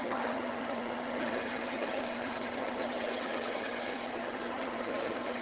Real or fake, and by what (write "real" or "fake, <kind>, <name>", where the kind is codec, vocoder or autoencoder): fake, vocoder, HiFi-GAN